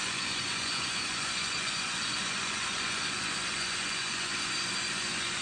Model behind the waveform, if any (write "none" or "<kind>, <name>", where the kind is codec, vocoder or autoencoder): vocoder, Vocos